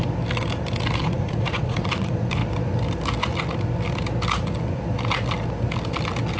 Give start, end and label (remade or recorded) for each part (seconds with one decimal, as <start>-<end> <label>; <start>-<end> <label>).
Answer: 0.0-1.0 recorded; 1.0-2.4 remade; 2.4-6.4 recorded